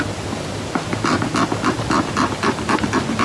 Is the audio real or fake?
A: fake